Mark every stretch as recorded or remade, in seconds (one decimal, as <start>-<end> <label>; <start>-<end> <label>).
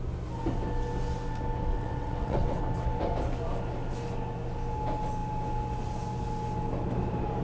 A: 0.0-1.7 recorded; 1.7-2.6 remade; 2.6-7.4 recorded